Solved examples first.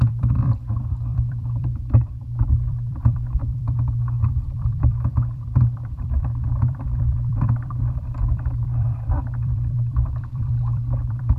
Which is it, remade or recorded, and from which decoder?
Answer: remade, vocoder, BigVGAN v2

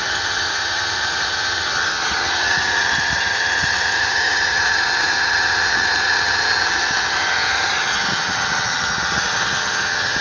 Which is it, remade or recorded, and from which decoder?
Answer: remade, vocoder, HiFi-GAN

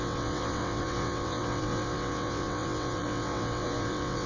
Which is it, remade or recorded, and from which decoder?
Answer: remade, vocoder, WaveNeXt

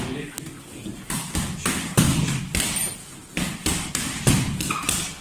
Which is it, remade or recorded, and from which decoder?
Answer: recorded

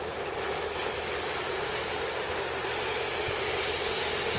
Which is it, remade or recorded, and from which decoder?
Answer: recorded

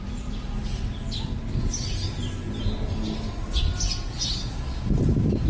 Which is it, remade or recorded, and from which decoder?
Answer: recorded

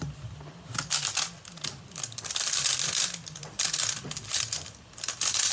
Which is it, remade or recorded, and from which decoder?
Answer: recorded